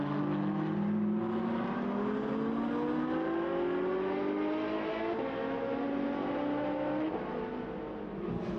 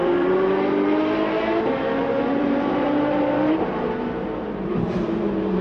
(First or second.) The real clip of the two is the first